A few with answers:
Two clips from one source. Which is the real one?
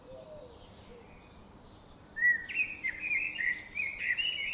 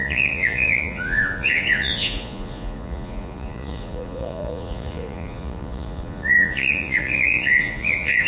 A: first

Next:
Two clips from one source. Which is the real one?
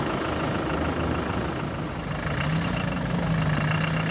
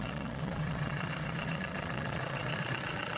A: first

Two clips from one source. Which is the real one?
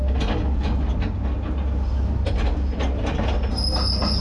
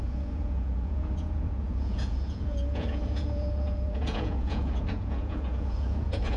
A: first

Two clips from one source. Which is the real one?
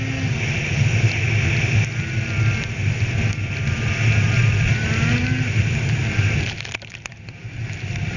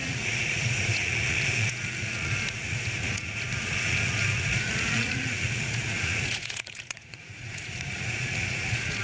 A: first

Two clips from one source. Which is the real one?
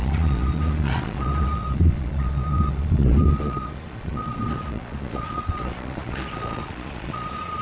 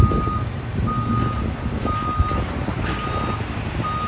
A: second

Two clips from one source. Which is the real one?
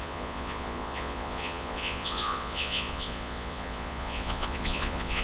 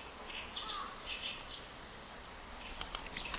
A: second